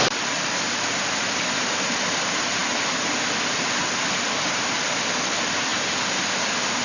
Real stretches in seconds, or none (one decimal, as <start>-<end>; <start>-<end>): 0.0-6.8